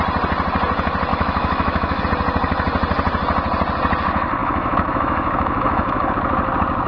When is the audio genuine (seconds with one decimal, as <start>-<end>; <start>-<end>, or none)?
0.0-1.1; 2.0-4.4; 6.1-6.9